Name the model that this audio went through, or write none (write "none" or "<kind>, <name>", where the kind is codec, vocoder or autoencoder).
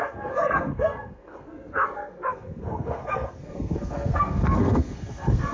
codec, SNAC